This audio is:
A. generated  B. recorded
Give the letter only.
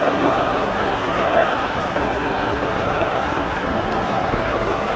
A